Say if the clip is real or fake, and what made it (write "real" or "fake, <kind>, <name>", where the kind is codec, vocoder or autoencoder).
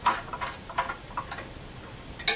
real